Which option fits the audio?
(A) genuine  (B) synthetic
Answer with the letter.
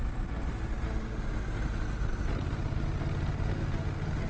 A